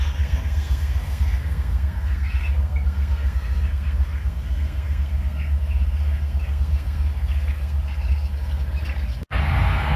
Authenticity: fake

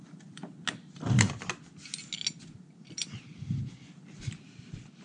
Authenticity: real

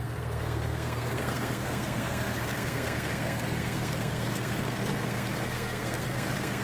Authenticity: fake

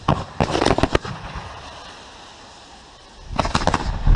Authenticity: real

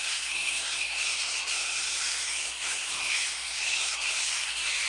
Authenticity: fake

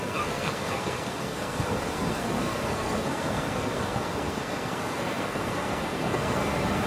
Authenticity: fake